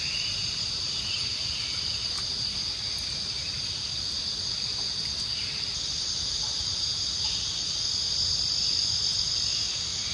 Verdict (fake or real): real